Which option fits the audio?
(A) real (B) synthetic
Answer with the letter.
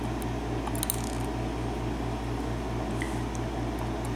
A